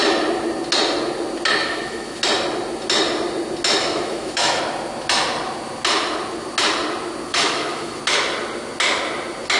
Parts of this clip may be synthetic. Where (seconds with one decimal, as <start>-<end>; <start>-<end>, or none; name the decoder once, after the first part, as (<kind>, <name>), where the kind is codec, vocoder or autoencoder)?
1.6-2.2 (autoencoder, DAC-VAE); 3.8-4.6; 7.3-8.0